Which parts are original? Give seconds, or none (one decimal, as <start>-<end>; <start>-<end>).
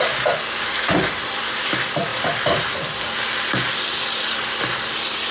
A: 0.0-5.3